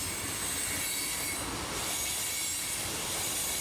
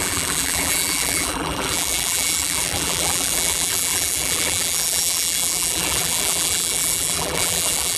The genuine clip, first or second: first